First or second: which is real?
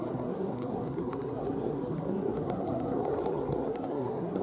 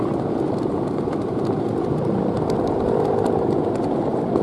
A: second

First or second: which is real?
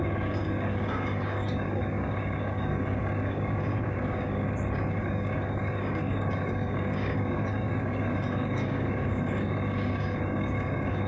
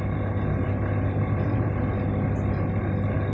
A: second